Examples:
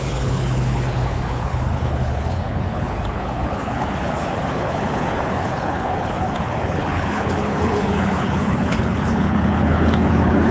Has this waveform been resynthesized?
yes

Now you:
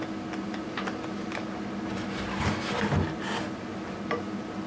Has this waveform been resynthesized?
no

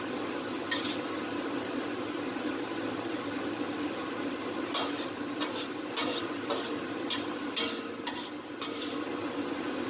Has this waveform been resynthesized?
no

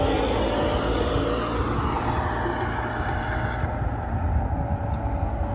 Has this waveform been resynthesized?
no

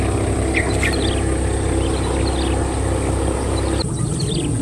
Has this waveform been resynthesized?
no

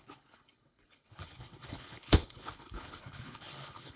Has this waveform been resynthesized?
yes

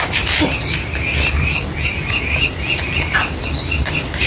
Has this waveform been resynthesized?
no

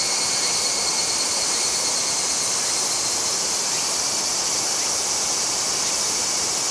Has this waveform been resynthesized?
no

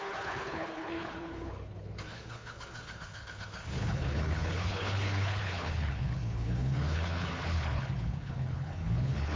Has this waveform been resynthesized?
yes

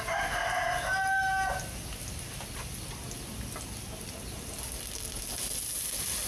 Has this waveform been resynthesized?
no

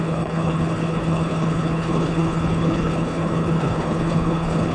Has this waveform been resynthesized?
yes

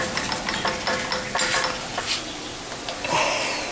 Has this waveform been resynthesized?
no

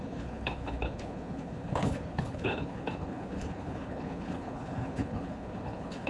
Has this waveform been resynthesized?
yes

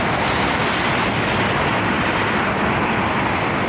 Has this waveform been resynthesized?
no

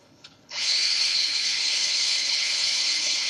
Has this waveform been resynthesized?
yes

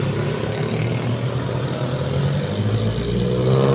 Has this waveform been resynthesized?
no